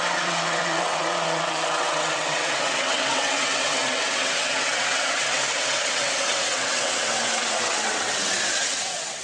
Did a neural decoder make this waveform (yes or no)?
yes